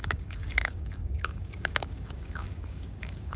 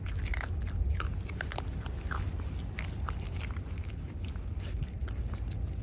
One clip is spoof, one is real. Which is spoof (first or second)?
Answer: first